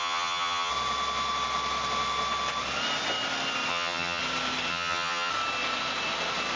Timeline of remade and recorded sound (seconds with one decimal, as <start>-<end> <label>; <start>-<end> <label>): 0.0-0.7 remade; 0.7-3.7 recorded; 3.7-4.2 remade; 4.2-4.7 recorded; 4.7-5.3 remade; 5.3-6.6 recorded